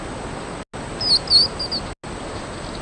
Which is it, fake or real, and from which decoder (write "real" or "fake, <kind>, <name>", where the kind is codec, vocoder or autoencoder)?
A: real